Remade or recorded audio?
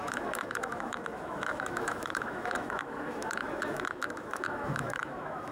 remade